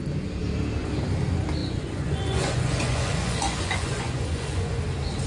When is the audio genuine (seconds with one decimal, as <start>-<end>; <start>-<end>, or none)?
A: 0.0-1.6; 4.8-5.3